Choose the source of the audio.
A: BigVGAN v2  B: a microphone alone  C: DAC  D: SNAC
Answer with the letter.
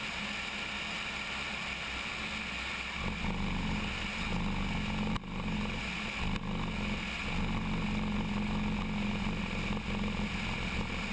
B